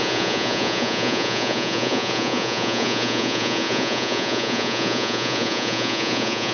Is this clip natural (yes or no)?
no